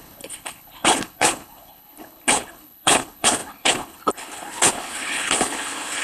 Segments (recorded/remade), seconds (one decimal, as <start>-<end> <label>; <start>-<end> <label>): 0.0-6.0 remade

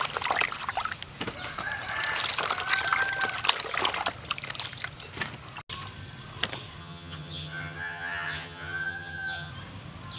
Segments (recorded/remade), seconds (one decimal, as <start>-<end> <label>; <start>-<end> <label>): 0.0-6.8 recorded; 6.8-9.5 remade; 9.5-10.2 recorded